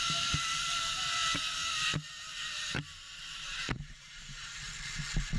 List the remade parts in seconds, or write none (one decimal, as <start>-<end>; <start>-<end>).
0.0-1.2; 2.4-4.7